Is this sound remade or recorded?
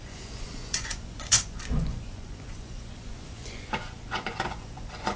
remade